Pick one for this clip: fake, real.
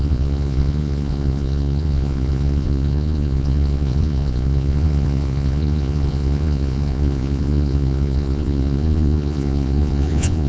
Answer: fake